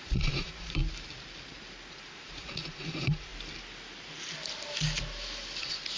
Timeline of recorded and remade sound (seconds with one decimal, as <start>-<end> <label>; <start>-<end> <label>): 0.0-0.8 remade; 0.8-1.9 recorded; 1.9-3.3 remade; 3.3-5.6 recorded; 5.6-6.0 remade